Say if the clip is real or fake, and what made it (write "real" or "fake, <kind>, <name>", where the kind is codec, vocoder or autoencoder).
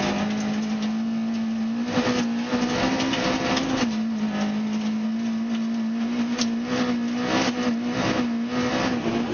real